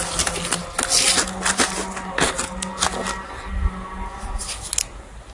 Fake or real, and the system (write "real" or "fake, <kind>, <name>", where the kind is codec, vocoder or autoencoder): real